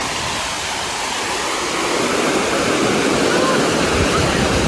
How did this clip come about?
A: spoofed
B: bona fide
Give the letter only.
B